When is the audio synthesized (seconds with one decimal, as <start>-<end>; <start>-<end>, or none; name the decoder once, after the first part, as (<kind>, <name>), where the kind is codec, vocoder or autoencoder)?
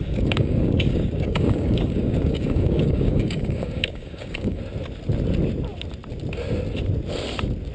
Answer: 0.0-4.6 (codec, DAC)